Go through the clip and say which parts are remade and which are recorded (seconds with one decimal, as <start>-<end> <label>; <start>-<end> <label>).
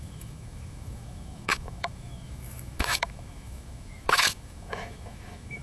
0.0-5.6 remade